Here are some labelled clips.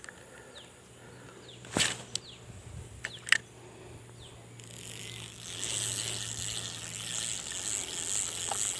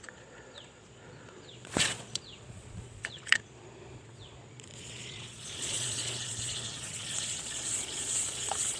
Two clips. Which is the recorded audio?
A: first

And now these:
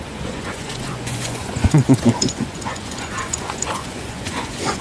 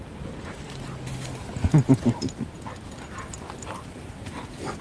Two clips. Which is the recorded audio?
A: second